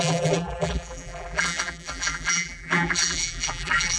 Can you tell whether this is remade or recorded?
remade